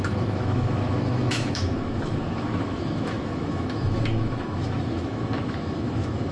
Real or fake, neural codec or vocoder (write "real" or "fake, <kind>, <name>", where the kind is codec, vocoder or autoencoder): fake, autoencoder, DAC-VAE